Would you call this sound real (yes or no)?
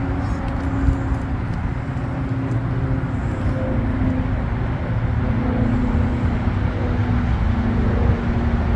yes